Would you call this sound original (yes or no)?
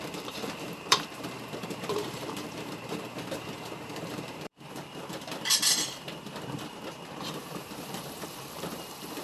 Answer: no